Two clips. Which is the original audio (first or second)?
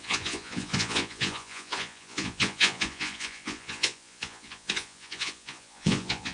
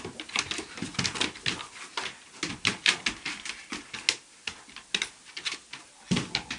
second